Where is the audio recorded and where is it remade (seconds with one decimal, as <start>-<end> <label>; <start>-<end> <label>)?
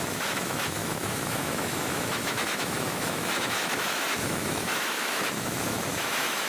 0.0-6.5 remade